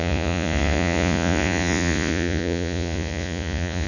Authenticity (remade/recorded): remade